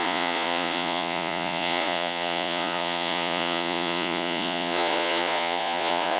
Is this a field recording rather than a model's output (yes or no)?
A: no